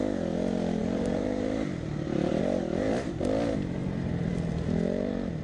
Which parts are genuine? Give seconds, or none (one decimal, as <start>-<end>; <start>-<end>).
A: 0.0-0.8; 2.4-3.8; 4.3-5.4